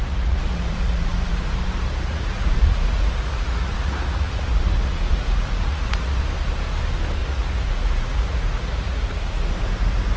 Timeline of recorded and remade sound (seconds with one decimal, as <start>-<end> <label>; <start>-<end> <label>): 0.0-1.5 remade; 1.5-2.1 recorded; 2.1-6.2 remade; 6.2-7.2 recorded; 7.2-9.4 remade; 9.4-10.2 recorded